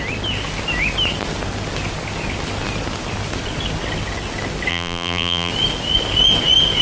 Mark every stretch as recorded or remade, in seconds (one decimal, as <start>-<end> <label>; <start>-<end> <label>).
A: 0.0-4.7 recorded; 4.7-5.5 remade; 5.5-6.8 recorded